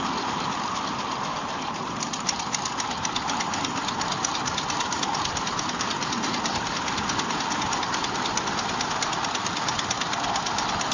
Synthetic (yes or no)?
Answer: no